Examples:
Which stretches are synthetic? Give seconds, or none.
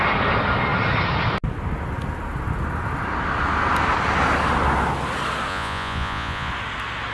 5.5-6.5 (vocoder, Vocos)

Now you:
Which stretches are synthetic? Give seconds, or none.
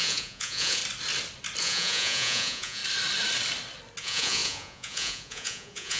0.0-0.8 (vocoder, Vocos); 1.6-2.8; 4.0-6.0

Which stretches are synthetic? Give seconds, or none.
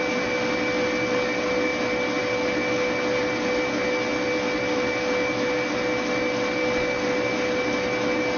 none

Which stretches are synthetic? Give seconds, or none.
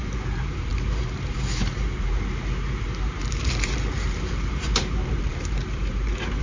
0.0-6.4 (vocoder, BigVGAN v2)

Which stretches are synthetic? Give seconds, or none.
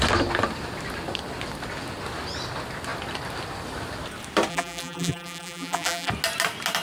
4.5-6.1 (vocoder, BigVGAN v2)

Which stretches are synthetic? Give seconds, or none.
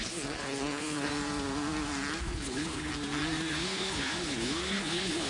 0.0-1.1 (codec, HILCodec); 2.2-2.9; 3.5-5.3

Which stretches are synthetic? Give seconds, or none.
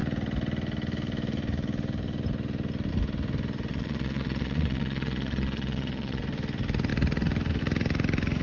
3.7-6.2 (vocoder, Vocos)